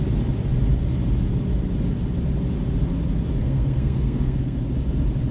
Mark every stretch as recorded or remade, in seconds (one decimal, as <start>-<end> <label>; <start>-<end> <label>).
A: 0.0-3.4 recorded; 3.4-4.6 remade; 4.6-5.3 recorded